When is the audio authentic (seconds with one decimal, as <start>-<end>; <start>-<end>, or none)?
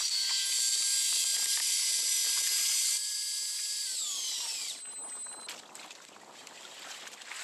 0.0-1.3; 1.9-2.8; 5.3-7.4